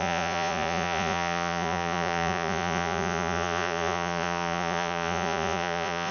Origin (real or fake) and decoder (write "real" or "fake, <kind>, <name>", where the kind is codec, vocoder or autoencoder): fake, vocoder, Vocos